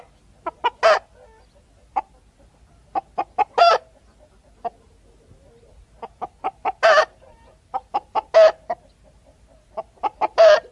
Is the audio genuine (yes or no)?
yes